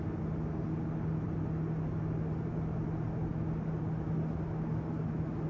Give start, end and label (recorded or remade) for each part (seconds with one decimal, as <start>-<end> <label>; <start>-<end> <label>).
0.0-5.5 recorded